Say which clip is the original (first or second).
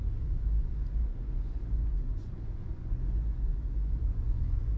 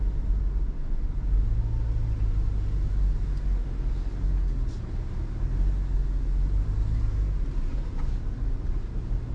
second